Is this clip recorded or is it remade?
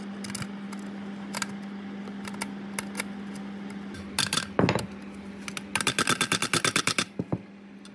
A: recorded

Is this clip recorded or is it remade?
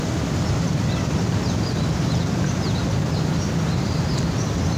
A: recorded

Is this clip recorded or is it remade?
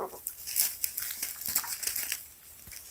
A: recorded